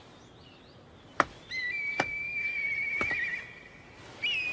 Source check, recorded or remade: recorded